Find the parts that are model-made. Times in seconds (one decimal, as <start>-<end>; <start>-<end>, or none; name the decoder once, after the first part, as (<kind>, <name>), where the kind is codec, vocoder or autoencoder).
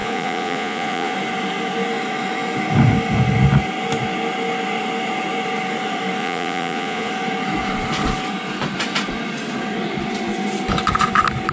0.0-1.1 (vocoder, Vocos); 6.2-7.1